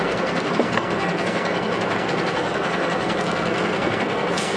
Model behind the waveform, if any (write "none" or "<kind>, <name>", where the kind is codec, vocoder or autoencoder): codec, SNAC